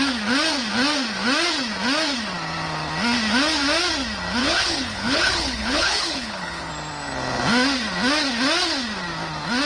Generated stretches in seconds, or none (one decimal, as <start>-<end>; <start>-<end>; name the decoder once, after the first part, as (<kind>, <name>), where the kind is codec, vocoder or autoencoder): 4.4-6.7 (codec, HILCodec)